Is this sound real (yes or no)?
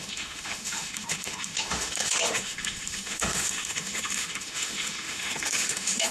no